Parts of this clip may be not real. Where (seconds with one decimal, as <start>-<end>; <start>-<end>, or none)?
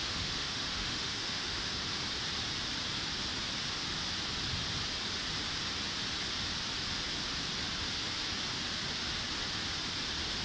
0.0-1.8